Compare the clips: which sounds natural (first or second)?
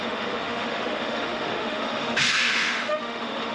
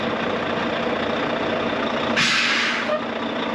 second